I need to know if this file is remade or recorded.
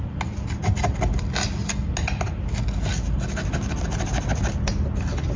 recorded